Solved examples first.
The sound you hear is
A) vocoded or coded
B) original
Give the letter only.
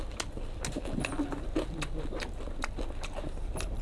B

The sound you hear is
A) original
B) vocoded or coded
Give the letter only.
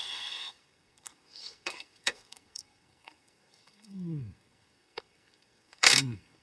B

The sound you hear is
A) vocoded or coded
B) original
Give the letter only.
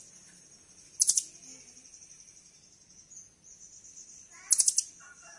B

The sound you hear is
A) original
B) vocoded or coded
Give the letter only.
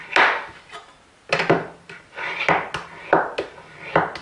A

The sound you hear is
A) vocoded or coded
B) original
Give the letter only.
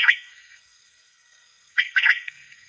A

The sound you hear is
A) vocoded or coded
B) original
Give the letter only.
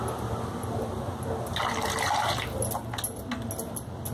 B